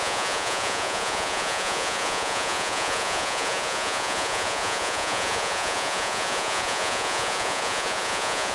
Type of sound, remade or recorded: remade